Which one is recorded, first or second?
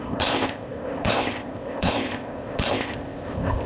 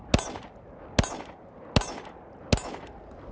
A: second